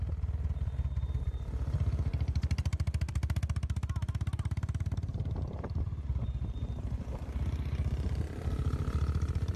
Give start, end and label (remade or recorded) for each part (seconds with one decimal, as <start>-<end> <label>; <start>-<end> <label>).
0.0-9.6 recorded